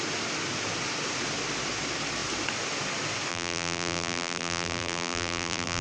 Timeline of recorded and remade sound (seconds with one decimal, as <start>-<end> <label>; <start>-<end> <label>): 0.0-3.3 recorded; 3.3-5.8 remade